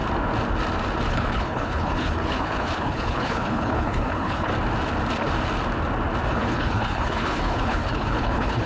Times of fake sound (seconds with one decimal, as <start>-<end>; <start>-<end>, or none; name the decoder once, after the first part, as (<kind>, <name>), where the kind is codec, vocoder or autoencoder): 1.1-4.5 (codec, HILCodec); 6.3-8.7